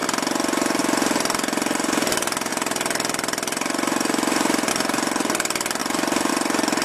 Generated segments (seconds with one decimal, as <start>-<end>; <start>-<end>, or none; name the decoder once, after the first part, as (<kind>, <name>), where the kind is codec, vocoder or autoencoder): 0.0-0.8 (vocoder, BigVGAN v2); 2.5-4.7; 5.8-6.3